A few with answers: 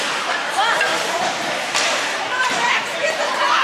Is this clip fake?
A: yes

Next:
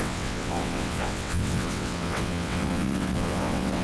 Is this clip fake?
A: yes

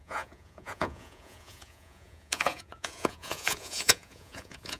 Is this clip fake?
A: yes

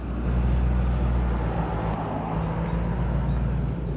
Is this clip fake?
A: no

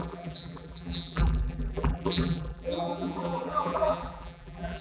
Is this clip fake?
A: yes